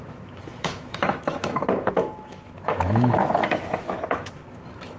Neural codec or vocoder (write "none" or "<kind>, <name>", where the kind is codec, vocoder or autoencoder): autoencoder, DAC-VAE